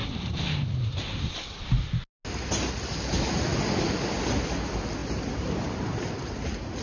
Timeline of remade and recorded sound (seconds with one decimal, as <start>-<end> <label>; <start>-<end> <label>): 0.0-1.3 remade; 1.3-5.0 recorded; 5.0-6.1 remade; 6.1-6.8 recorded